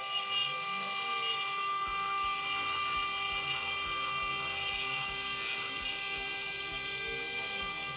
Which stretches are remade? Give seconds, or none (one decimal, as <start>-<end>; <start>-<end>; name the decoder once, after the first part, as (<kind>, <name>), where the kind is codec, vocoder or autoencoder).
none